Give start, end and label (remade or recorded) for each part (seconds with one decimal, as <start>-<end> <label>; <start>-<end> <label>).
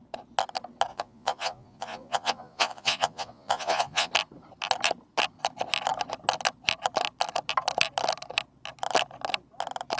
0.0-0.9 recorded; 0.9-4.1 remade; 4.1-10.0 recorded